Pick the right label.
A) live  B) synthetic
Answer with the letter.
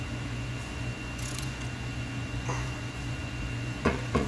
B